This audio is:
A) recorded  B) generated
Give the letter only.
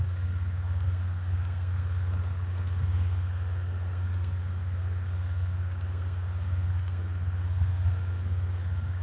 B